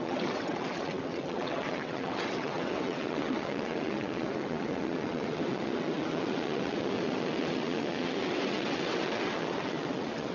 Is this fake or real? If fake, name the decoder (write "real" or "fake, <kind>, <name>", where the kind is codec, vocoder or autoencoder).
fake, vocoder, WaveNeXt